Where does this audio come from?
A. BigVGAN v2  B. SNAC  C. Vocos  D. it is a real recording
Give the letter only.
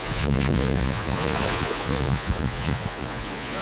C